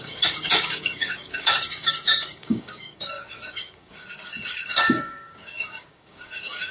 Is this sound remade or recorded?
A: remade